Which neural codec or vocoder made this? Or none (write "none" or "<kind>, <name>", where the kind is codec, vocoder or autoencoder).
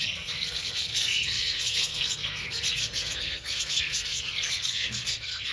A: codec, SNAC